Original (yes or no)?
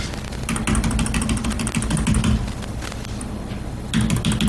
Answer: yes